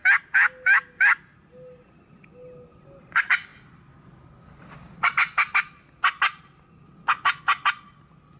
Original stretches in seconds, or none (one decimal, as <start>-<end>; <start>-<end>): 0.0-8.4